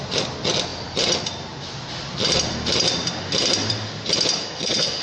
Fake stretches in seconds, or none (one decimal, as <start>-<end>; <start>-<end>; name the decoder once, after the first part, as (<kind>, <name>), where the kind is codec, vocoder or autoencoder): 4.4-5.0 (codec, SNAC)

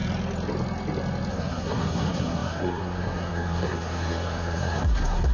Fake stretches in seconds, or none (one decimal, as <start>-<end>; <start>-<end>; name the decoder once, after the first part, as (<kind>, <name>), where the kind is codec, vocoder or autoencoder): 1.3-5.3 (codec, SNAC)

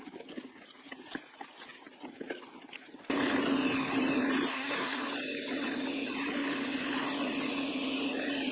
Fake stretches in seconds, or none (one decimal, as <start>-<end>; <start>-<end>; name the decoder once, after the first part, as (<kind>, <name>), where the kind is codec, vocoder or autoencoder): 4.5-5.0 (codec, SNAC)

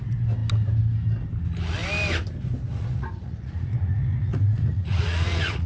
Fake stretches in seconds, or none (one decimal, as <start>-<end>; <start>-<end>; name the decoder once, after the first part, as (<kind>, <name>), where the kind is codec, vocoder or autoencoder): 2.7-5.7 (vocoder, Vocos)